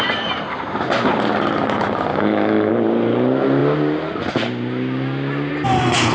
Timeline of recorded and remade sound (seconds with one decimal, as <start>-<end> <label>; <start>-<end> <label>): 0.0-2.1 recorded; 2.1-2.7 remade; 2.7-6.1 recorded